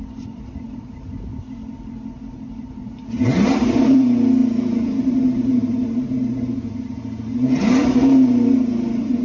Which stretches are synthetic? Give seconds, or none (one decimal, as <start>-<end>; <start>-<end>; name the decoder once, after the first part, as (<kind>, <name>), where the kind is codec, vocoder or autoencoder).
0.0-1.3 (vocoder, BigVGAN v2); 2.3-9.2